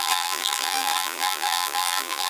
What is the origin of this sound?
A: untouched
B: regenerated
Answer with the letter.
B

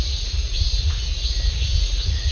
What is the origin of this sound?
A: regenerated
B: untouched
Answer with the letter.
A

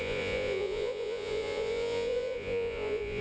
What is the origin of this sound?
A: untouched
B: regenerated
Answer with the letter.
B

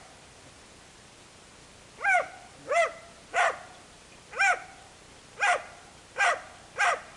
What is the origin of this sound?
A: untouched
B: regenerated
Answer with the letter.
B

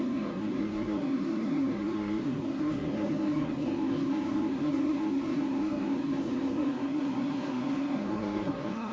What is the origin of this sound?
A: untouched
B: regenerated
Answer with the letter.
B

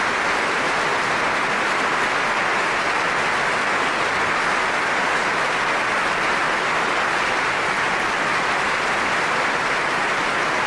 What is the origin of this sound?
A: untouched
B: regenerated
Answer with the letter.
A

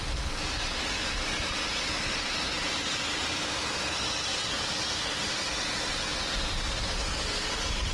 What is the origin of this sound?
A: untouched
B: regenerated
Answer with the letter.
A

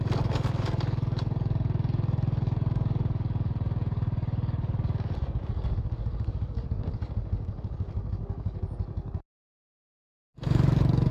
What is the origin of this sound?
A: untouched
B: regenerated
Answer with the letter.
B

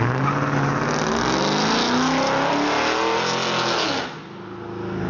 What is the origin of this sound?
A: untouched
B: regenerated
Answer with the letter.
A